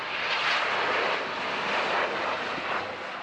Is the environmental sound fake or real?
real